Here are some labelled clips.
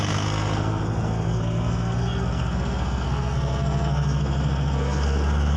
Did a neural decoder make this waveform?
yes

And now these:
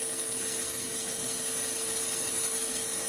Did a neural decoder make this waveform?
yes